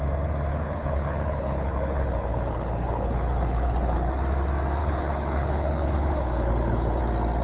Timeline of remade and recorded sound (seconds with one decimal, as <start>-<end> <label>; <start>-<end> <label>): 0.0-0.5 recorded; 0.5-4.1 remade; 4.1-4.8 recorded; 4.8-7.0 remade; 7.0-7.4 recorded